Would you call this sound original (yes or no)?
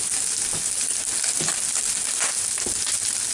yes